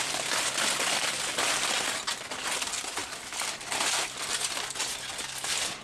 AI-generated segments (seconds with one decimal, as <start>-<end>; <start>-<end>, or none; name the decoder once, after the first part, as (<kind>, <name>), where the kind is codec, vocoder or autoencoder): none

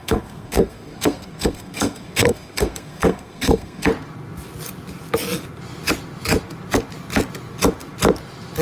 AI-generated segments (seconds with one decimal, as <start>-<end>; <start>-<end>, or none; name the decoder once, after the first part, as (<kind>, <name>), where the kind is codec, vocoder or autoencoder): 0.0-3.9 (codec, SNAC)

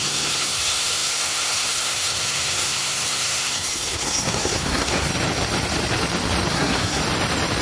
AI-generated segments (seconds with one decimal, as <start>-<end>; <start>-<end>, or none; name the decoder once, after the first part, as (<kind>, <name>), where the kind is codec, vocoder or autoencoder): 0.0-5.1 (codec, SNAC); 6.5-7.0

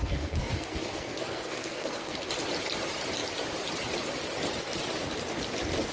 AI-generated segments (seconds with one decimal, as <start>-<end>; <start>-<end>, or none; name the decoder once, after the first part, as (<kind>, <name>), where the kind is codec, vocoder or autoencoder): 0.0-2.3 (codec, SNAC)

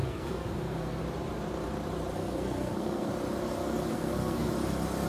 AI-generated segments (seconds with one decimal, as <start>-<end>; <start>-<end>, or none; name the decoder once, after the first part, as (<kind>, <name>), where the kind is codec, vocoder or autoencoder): 0.0-1.0 (codec, SNAC); 2.2-3.1; 3.9-4.5

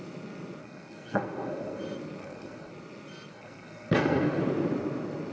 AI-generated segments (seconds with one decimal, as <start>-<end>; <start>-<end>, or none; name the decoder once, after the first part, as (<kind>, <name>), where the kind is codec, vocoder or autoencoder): 0.6-1.8 (codec, SNAC); 2.2-2.7; 3.3-4.4

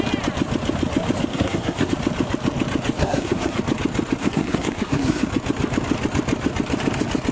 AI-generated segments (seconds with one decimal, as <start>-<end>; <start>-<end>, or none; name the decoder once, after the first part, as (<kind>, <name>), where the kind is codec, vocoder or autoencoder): 1.3-1.9 (codec, SNAC); 3.0-3.6; 4.2-5.3